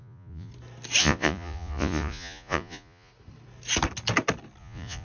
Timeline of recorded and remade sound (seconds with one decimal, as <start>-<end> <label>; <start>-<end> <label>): 0.0-0.5 remade; 0.5-1.0 recorded; 1.0-3.1 remade; 3.1-4.6 recorded; 4.6-5.0 remade